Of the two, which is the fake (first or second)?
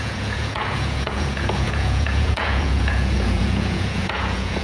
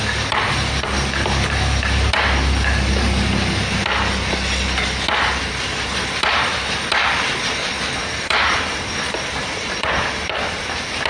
first